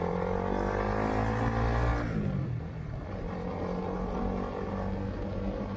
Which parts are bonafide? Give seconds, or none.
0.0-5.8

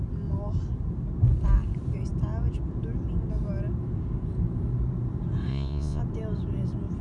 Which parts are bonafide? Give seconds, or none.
0.0-5.5; 6.0-7.0

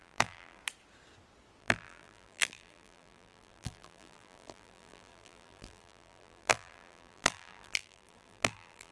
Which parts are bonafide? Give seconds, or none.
0.6-1.6

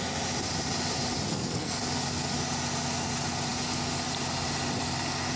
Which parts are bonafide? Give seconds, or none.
0.0-1.3; 1.8-5.4

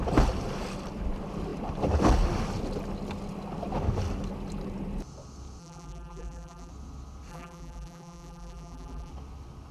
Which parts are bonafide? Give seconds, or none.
0.0-5.6; 6.7-7.3; 9.1-9.7